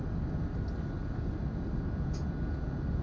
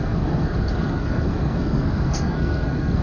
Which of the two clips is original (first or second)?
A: first